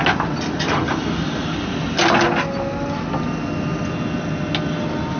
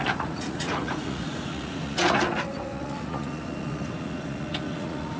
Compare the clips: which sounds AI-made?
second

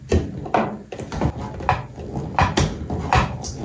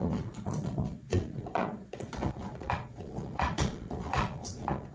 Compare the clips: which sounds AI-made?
second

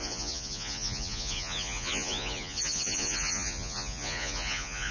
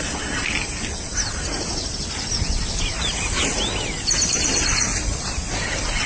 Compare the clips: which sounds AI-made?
first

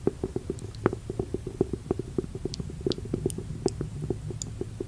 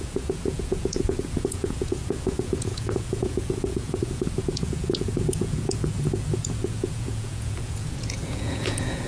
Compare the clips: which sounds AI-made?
second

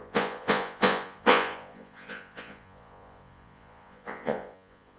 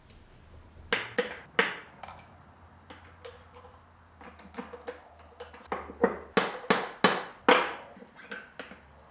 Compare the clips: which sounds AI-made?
first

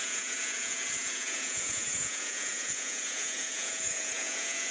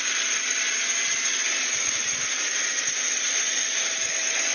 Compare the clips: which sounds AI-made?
first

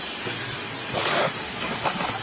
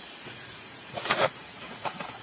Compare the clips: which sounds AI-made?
second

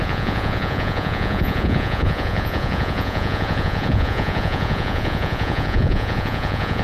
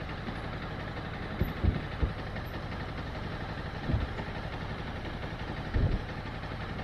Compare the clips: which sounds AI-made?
first